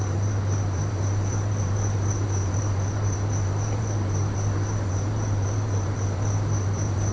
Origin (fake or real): fake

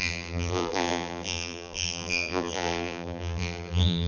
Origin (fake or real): fake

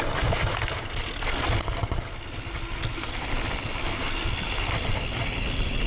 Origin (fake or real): real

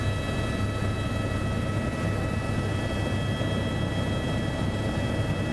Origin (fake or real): real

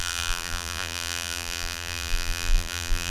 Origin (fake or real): fake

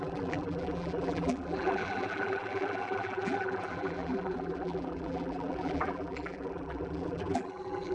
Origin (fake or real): fake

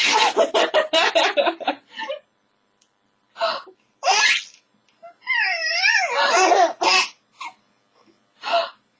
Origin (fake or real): real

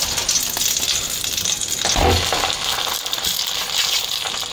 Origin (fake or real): real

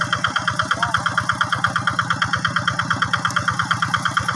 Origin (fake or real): real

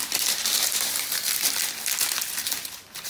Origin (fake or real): real